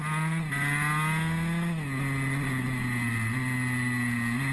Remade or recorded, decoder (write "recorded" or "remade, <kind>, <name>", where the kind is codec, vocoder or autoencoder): recorded